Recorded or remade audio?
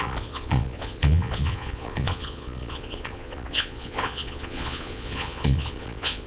remade